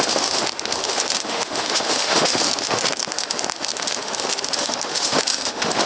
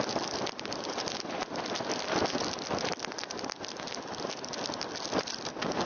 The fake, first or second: first